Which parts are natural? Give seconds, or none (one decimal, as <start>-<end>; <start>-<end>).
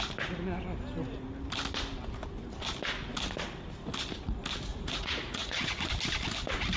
0.0-4.7; 5.9-6.8